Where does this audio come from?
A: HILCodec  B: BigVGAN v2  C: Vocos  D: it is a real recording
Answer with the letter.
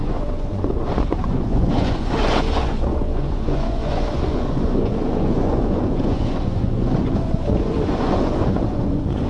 C